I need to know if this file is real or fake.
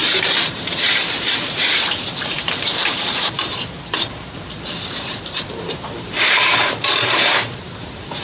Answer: fake